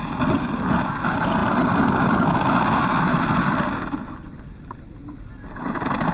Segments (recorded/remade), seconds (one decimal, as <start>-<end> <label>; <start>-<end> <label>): 0.0-6.1 recorded